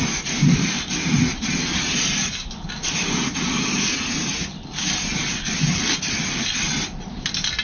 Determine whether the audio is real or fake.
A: real